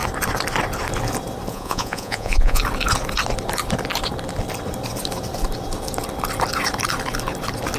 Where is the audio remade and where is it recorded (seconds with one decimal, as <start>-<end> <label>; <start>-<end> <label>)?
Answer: 0.0-1.5 recorded; 1.5-2.6 remade; 2.6-7.8 recorded